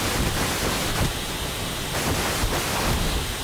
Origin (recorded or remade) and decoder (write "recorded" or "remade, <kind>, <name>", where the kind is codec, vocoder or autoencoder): recorded